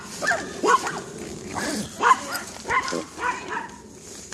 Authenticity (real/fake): real